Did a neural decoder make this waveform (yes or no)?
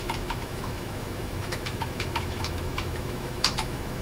yes